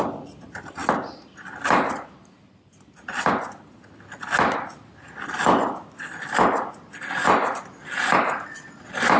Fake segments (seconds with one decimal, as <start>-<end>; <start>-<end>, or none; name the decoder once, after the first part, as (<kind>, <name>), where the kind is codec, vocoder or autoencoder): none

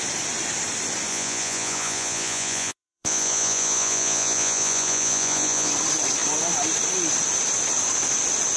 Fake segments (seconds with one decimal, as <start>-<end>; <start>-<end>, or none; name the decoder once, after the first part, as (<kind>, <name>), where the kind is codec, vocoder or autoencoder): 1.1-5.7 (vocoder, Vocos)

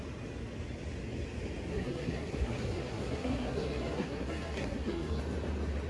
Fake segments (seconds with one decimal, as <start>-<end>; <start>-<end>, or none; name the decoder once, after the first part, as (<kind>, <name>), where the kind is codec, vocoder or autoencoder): 1.7-5.2 (codec, SNAC)

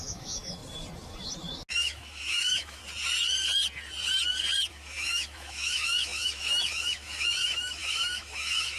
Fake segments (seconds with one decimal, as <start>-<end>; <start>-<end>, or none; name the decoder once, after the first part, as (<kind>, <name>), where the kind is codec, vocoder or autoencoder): 0.0-0.6 (autoencoder, DAC-VAE); 1.7-2.8; 4.7-8.8

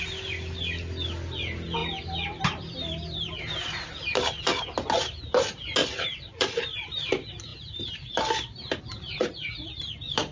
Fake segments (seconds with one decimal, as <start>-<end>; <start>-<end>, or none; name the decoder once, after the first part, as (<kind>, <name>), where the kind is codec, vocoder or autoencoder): 5.8-6.9 (vocoder, BigVGAN v2); 7.5-8.2